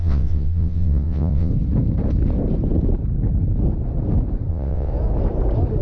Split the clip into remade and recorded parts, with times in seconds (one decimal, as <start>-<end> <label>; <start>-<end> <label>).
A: 0.0-1.5 remade; 1.5-4.5 recorded; 4.5-4.9 remade; 4.9-5.8 recorded